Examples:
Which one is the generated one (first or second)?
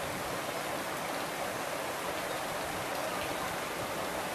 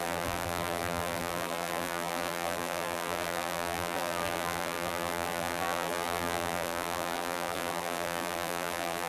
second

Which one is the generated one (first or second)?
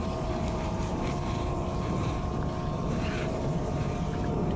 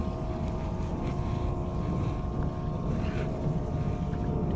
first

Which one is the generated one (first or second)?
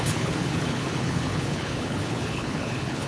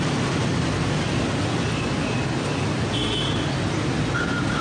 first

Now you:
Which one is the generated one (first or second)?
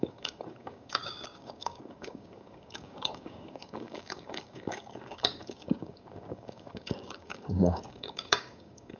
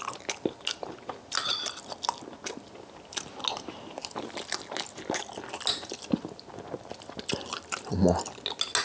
first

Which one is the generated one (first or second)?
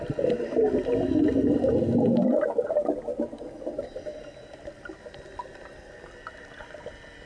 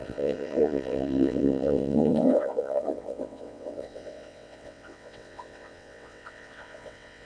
second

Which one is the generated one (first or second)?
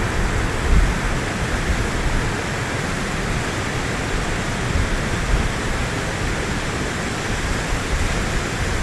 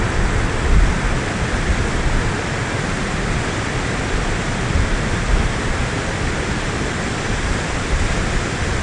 second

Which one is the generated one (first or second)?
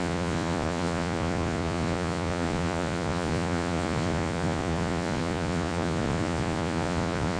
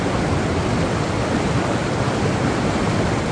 first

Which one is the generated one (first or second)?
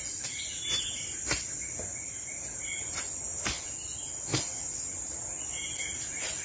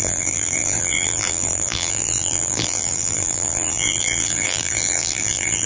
second